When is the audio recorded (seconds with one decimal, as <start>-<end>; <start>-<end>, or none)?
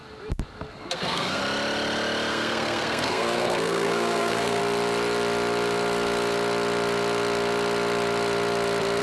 0.0-0.7; 1.4-2.3; 4.6-9.0